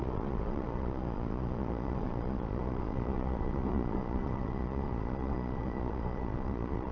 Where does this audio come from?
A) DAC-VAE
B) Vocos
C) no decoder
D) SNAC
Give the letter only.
B